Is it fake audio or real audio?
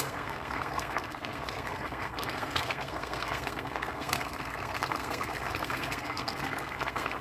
fake